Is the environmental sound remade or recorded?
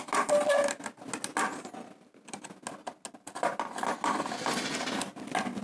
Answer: recorded